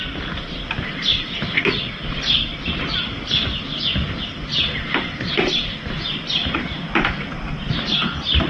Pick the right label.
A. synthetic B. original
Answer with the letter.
B